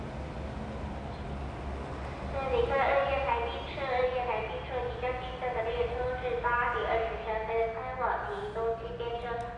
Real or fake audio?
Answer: real